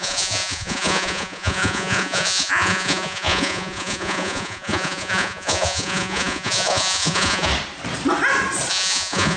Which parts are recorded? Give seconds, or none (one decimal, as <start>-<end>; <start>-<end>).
7.5-8.7